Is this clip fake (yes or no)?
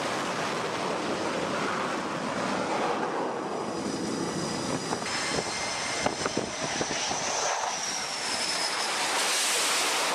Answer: no